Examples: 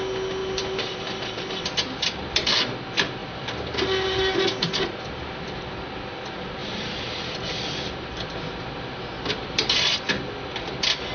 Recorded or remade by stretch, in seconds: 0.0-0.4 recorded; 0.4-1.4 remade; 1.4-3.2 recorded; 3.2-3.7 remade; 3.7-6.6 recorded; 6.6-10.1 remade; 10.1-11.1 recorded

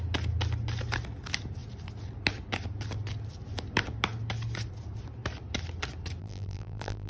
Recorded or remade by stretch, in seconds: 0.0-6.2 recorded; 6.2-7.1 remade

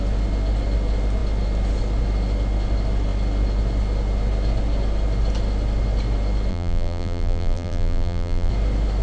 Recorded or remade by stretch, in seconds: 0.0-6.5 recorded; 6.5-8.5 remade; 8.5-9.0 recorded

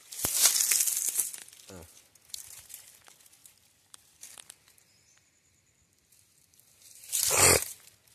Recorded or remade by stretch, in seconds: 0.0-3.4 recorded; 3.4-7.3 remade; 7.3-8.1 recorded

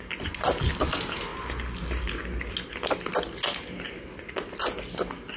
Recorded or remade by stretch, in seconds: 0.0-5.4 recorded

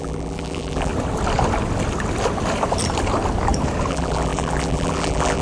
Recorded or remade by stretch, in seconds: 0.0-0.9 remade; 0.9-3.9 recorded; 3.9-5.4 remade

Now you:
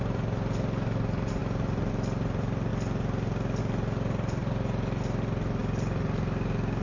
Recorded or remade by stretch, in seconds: 0.0-6.8 recorded

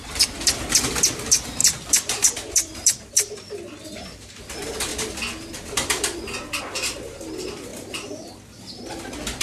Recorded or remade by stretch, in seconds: 0.0-1.6 recorded; 1.6-4.4 remade; 4.4-7.7 recorded; 7.7-8.3 remade; 8.3-9.4 recorded